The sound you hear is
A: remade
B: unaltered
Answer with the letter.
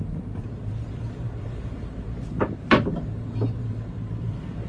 A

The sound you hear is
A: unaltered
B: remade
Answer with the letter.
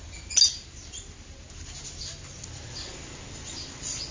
A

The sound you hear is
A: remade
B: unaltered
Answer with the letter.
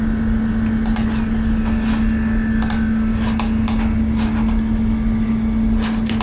B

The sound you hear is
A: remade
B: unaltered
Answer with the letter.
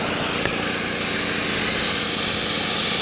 B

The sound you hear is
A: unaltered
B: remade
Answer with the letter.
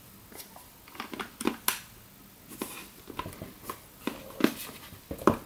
A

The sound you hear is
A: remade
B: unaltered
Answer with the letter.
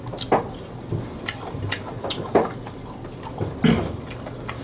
B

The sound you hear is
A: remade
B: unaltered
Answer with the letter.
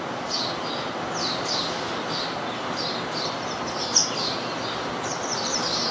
B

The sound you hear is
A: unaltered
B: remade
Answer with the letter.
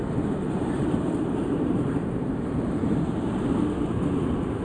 B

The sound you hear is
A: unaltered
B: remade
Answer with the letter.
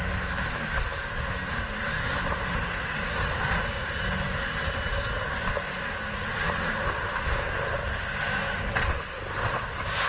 A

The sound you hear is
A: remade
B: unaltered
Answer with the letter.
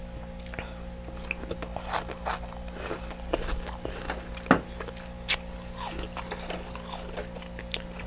B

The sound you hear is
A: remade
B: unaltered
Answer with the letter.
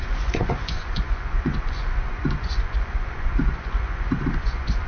A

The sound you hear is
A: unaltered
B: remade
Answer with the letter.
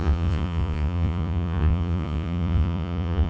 B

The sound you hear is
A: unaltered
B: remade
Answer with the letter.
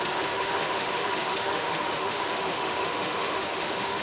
B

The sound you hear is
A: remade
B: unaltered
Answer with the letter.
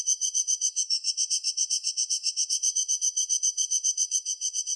A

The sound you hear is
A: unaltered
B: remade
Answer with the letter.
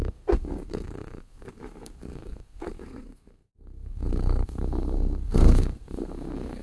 B